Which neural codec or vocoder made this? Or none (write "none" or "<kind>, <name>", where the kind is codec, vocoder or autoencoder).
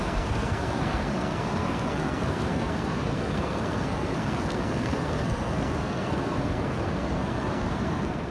codec, SNAC